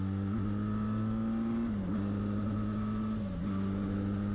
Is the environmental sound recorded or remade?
recorded